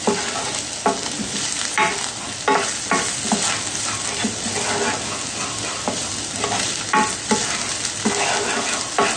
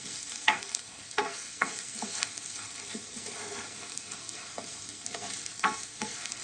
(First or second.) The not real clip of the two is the second